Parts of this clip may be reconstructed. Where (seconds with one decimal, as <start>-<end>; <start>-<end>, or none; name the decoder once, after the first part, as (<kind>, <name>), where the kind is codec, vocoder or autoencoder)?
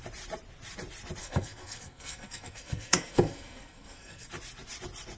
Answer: 1.2-4.3 (codec, SNAC)